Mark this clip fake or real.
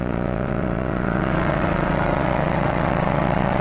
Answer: fake